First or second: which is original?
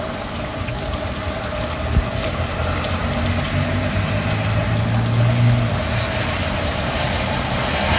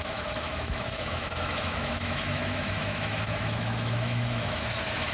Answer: first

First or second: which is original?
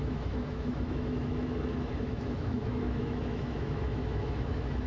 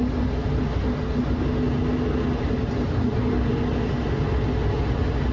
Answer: second